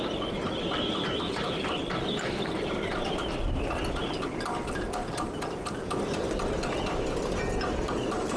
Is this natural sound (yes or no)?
yes